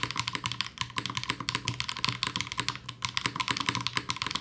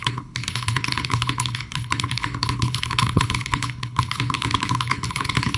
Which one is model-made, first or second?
second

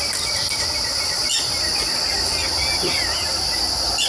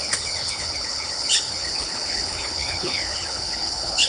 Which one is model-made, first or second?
second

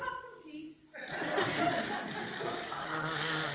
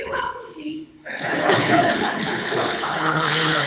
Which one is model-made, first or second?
second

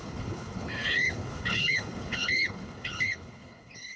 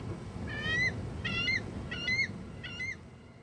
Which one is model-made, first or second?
first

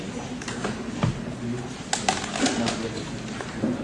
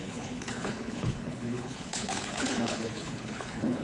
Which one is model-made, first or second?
second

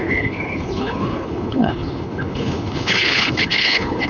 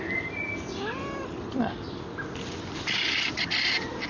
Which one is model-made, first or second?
first